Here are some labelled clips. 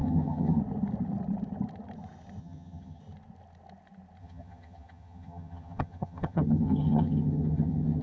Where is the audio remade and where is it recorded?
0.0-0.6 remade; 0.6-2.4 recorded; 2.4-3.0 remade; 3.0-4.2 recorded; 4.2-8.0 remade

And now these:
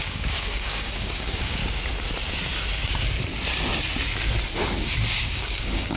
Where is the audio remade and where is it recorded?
0.0-1.6 remade; 1.6-5.2 recorded; 5.2-6.0 remade